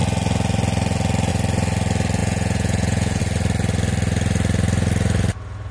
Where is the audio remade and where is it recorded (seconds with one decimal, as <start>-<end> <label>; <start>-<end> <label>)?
0.0-2.2 recorded; 2.2-3.2 remade; 3.2-5.7 recorded